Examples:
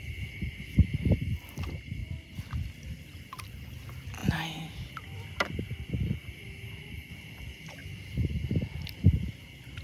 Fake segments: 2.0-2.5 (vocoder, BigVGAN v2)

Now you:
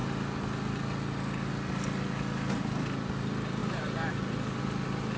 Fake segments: 3.6-4.6 (vocoder, BigVGAN v2)

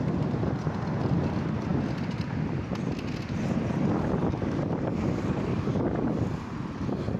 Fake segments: none

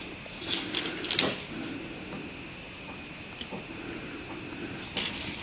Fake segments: none

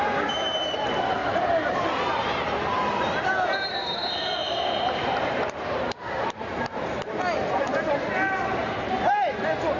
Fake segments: 1.2-2.0 (vocoder, BigVGAN v2); 2.7-7.1; 8.6-9.3

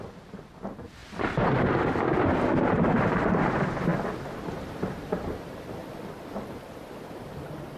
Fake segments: 0.0-3.9 (vocoder, BigVGAN v2); 4.5-5.8; 7.2-7.8